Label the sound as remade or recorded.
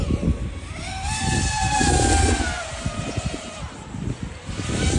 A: recorded